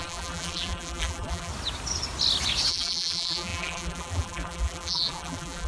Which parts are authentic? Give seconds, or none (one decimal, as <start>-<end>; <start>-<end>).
1.5-2.7

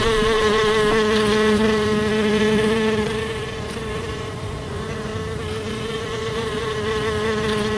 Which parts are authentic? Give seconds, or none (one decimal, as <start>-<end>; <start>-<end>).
5.1-5.7

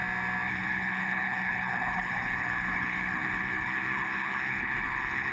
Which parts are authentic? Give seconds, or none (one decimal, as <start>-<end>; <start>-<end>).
0.0-0.5